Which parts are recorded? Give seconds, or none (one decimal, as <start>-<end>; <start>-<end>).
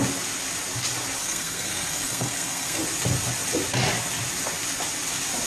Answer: 0.0-1.2; 2.8-5.5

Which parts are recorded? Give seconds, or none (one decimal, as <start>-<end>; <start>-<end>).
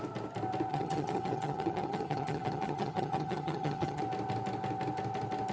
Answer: 0.0-0.7; 4.0-5.5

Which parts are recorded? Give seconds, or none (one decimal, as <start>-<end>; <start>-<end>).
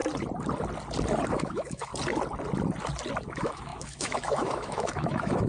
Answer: 0.0-1.3; 1.9-3.2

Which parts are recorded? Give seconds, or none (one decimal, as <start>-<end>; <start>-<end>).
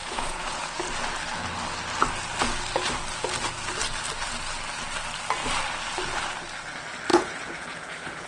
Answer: 0.8-7.1